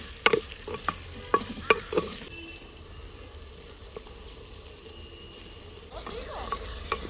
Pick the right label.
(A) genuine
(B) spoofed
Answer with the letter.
B